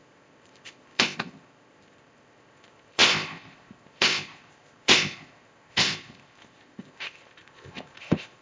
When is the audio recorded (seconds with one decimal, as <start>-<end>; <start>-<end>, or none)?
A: none